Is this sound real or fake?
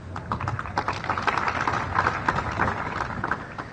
real